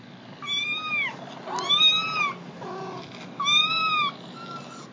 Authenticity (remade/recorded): recorded